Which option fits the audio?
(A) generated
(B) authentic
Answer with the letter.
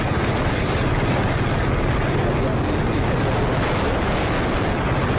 B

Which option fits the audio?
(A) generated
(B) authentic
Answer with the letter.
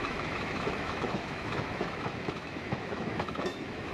A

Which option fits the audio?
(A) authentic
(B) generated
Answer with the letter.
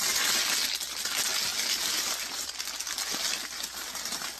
A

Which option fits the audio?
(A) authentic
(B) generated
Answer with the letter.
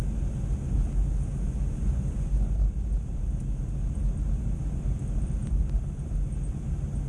A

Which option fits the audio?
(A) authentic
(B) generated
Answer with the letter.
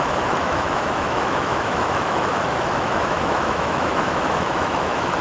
B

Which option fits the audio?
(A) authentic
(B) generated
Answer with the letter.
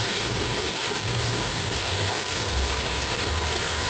B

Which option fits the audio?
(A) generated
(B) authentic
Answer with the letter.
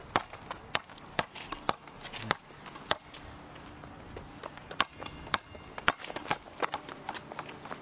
B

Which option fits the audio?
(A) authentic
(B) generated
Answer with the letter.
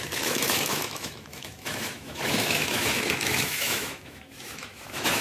B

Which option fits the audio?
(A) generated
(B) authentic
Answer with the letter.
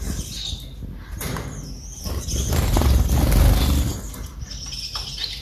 B